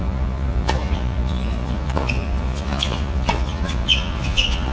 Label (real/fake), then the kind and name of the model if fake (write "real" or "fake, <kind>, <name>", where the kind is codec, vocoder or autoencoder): fake, vocoder, Vocos